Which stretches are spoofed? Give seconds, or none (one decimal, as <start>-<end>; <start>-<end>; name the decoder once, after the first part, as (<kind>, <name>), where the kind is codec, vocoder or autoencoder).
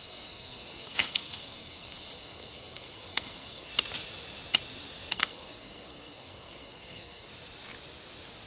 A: 0.0-3.7 (codec, SNAC); 5.1-7.3